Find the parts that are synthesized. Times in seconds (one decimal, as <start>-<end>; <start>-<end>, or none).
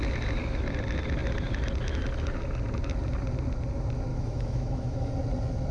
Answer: 4.1-5.1